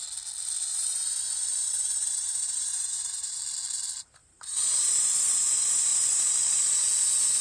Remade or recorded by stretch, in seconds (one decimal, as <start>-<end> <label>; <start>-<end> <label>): 0.0-0.7 recorded; 0.7-3.4 remade; 3.4-4.2 recorded; 4.2-5.0 remade; 5.0-5.9 recorded; 5.9-7.0 remade; 7.0-7.4 recorded

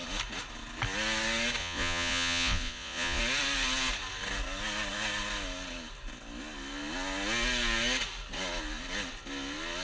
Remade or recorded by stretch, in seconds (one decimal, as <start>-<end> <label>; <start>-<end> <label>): 0.0-1.6 recorded; 1.6-3.2 remade; 3.2-9.8 recorded